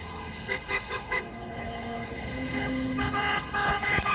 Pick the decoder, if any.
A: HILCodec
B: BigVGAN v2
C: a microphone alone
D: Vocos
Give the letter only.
A